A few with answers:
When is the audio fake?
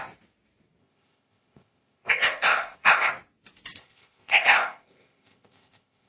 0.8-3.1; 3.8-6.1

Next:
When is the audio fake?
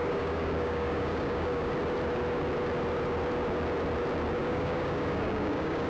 0.0-1.7; 4.4-5.9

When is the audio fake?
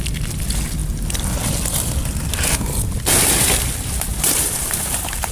4.1-5.3